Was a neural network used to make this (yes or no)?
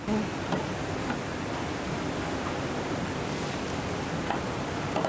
no